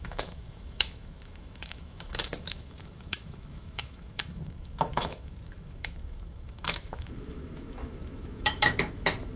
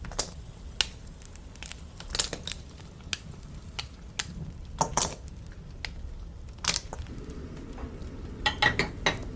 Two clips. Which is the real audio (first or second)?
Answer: second